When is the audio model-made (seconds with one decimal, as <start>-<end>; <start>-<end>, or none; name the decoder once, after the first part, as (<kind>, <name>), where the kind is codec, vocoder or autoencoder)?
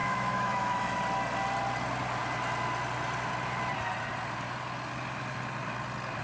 0.0-1.0 (autoencoder, DAC-VAE)